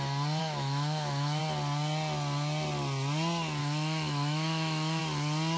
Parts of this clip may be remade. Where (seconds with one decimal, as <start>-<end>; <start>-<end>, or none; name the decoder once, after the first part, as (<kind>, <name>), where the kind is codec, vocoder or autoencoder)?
0.4-1.4 (autoencoder, DAC-VAE); 3.6-5.0